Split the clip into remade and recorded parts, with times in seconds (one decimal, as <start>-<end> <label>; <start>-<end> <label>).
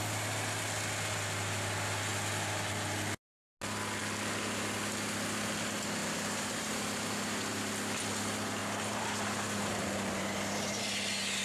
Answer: 0.0-6.0 recorded; 6.0-7.7 remade; 7.7-8.6 recorded; 8.6-10.8 remade; 10.8-11.4 recorded